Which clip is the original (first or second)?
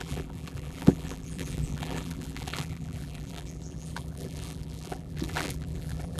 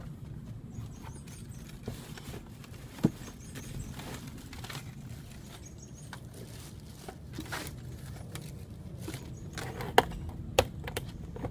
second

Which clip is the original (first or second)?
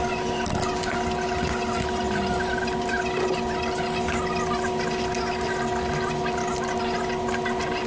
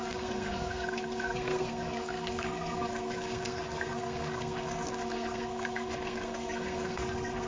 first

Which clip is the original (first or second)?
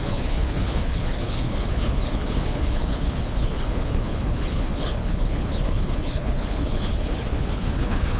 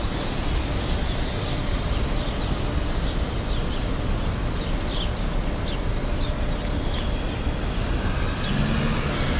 second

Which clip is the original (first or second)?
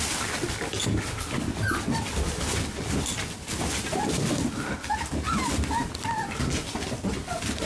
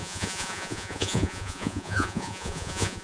first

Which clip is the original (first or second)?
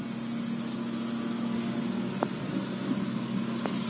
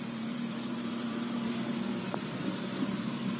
first